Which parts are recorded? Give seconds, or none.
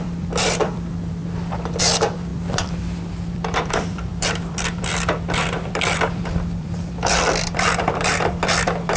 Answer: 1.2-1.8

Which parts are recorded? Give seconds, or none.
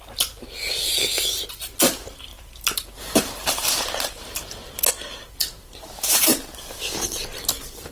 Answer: 0.0-2.3; 4.9-5.6; 6.2-7.9